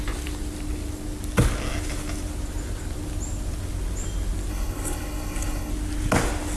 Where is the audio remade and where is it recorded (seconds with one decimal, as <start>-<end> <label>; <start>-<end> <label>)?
0.0-4.5 recorded; 4.5-5.7 remade; 5.7-6.6 recorded